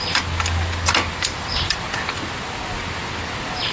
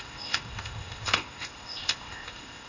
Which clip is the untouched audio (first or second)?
first